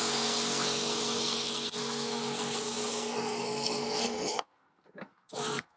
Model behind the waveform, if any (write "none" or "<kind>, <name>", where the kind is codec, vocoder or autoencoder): codec, SNAC